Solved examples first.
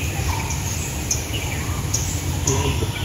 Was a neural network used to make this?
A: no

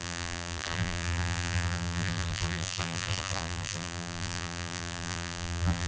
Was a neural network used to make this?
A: yes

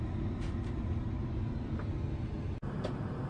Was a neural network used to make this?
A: no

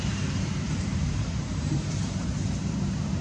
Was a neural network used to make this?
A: yes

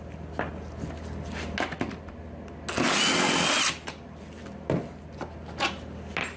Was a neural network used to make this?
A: no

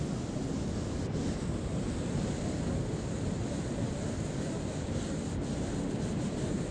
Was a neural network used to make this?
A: no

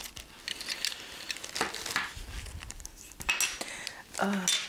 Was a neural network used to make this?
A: no